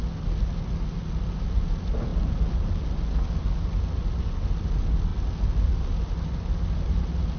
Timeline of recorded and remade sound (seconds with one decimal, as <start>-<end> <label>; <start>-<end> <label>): 0.0-7.4 recorded